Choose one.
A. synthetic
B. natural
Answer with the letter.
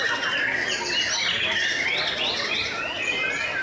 B